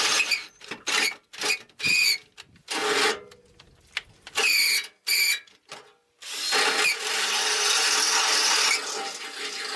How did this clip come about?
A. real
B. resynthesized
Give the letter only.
A